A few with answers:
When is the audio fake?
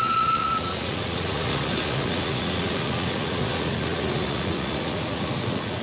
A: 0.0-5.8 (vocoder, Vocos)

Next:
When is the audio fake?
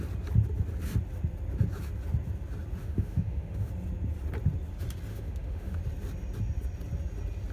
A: 2.8-3.7 (autoencoder, DAC-VAE); 5.1-5.8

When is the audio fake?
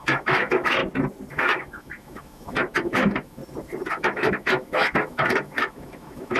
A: 0.0-0.8 (autoencoder, DAC-VAE); 1.3-3.4; 3.9-6.4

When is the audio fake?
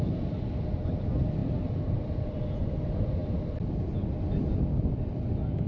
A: none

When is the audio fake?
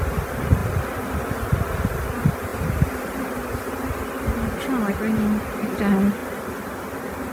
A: none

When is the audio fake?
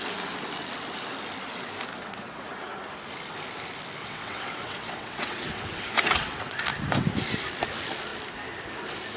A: 1.9-2.4 (vocoder, WaveNeXt); 4.0-6.6